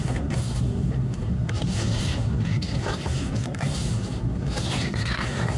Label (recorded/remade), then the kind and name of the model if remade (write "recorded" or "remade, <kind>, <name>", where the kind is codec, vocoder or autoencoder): remade, codec, SNAC